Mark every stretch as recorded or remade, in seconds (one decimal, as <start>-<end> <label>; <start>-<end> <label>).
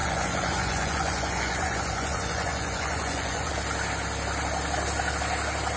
0.0-3.5 remade; 3.5-5.8 recorded